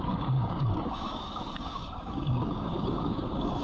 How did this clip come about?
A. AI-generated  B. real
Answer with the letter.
A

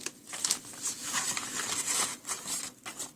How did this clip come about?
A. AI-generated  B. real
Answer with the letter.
B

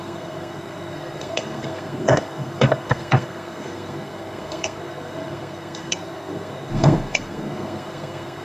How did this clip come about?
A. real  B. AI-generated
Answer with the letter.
B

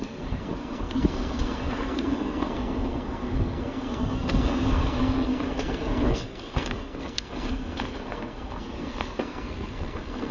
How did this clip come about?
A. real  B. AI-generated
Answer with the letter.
B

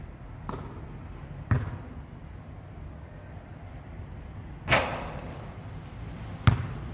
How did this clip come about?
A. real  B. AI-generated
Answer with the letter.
A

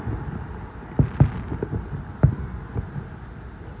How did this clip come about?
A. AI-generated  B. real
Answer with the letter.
B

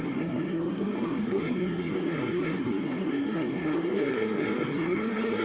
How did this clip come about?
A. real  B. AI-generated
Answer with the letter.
B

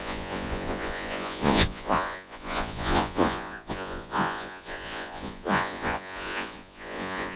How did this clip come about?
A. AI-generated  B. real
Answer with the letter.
A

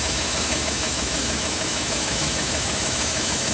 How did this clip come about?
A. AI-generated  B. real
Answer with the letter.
A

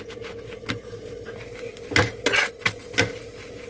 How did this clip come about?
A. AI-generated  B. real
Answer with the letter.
B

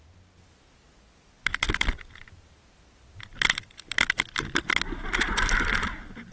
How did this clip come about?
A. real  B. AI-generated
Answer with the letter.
A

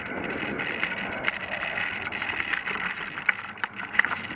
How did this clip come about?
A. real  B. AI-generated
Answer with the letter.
A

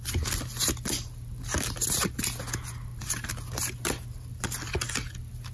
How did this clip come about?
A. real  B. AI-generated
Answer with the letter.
A